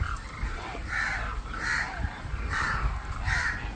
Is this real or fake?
real